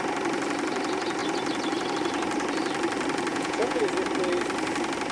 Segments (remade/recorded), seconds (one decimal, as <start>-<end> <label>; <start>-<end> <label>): 0.0-3.3 recorded; 3.3-3.8 remade; 3.8-5.1 recorded